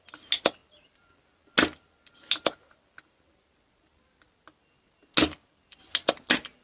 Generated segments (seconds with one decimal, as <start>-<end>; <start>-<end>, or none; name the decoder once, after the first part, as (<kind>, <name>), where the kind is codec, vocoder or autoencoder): none